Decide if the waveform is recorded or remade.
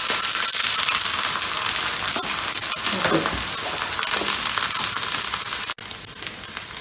recorded